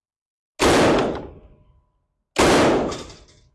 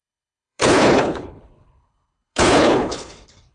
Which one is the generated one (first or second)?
second